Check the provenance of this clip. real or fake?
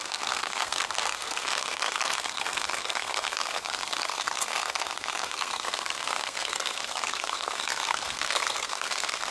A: fake